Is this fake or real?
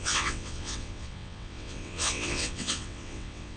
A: fake